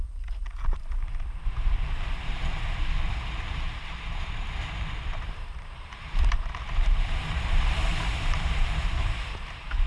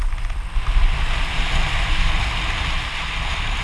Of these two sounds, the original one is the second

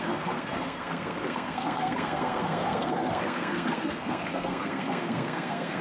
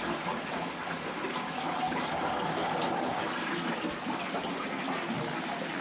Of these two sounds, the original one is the second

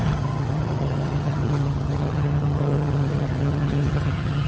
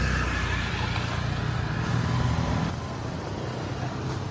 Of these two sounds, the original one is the second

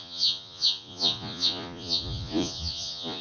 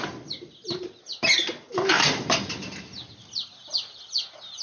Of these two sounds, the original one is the second